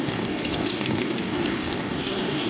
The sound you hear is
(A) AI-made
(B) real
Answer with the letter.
A